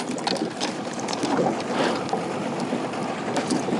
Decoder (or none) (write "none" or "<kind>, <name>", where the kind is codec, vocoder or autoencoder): none